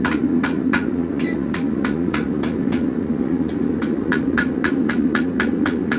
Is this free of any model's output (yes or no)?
no